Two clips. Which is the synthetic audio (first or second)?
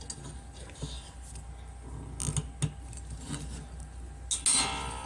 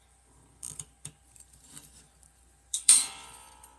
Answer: second